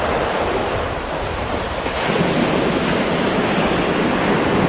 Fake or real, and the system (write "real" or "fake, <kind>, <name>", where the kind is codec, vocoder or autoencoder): real